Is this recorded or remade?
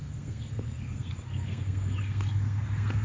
remade